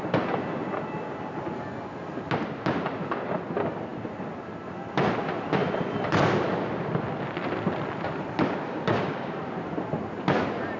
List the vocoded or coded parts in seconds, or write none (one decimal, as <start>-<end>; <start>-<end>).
8.7-9.3